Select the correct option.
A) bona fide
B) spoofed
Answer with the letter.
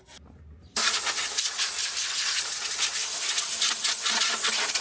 A